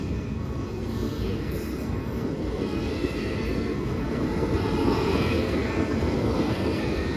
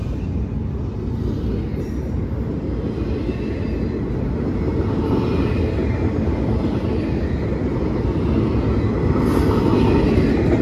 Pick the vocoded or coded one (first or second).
first